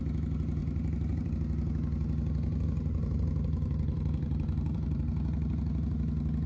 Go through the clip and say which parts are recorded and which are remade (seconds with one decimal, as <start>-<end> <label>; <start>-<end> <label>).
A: 0.0-0.6 recorded; 0.6-1.3 remade; 1.3-2.5 recorded; 2.5-5.0 remade; 5.0-6.5 recorded